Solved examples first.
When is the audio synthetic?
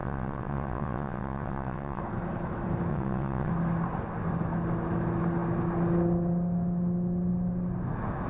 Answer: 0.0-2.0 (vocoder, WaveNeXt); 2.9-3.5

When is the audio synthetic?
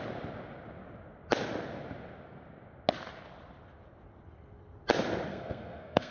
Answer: 5.3-6.1 (codec, SNAC)